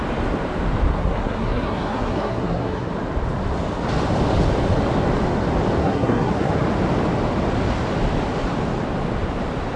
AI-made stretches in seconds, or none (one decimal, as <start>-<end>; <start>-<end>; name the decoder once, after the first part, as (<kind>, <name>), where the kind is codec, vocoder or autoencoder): 0.9-2.9 (codec, SNAC); 5.8-6.5